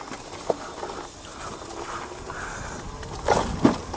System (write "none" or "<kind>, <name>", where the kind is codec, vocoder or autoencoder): none